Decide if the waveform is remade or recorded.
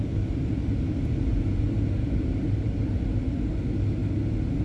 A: recorded